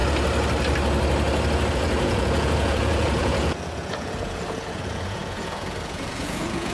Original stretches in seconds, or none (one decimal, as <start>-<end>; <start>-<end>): 0.0-1.7